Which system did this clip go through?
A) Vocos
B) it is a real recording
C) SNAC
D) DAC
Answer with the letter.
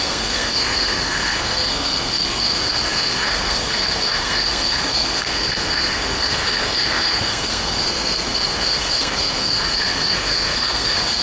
C